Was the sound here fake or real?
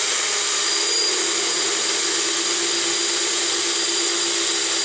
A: real